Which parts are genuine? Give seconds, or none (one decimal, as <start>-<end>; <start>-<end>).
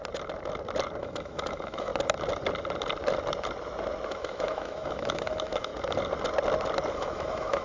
0.0-1.0; 1.9-4.1; 5.7-6.9